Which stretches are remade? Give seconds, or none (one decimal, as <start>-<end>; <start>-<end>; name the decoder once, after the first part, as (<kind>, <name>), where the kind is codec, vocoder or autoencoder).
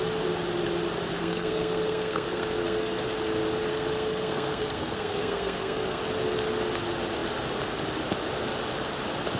1.2-3.0 (codec, SNAC); 3.7-6.0